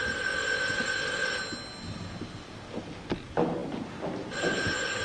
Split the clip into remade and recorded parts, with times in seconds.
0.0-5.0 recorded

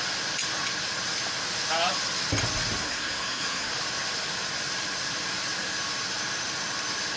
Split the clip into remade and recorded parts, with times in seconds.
0.0-2.8 recorded; 2.8-3.7 remade; 3.7-7.2 recorded

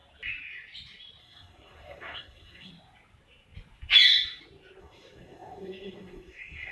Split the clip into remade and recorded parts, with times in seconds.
0.0-1.2 recorded; 1.2-2.7 remade; 2.7-4.8 recorded; 4.8-6.7 remade

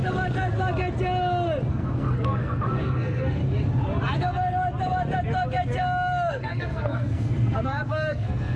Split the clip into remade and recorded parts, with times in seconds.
0.0-1.7 recorded; 1.7-3.4 remade; 3.4-6.3 recorded; 6.3-8.6 remade

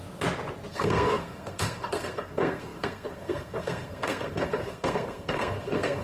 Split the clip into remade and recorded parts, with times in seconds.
0.0-0.7 recorded; 0.7-6.0 remade